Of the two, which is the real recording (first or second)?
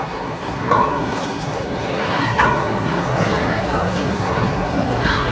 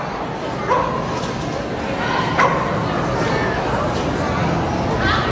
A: second